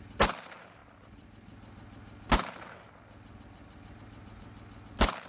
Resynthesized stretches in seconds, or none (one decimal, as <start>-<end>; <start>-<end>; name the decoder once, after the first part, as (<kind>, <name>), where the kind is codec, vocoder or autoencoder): none